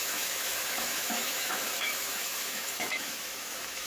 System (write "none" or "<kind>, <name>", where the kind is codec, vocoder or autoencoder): autoencoder, DAC-VAE